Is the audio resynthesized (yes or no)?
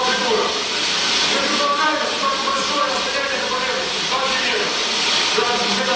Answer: no